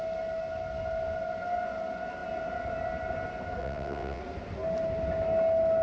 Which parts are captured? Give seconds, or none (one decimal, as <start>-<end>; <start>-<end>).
0.0-3.6; 4.2-5.8